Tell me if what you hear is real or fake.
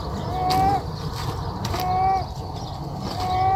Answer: real